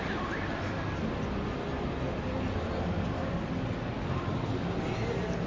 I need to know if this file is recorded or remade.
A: recorded